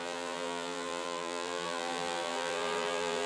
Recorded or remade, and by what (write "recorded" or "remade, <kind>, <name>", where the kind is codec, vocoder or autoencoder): remade, vocoder, BigVGAN v2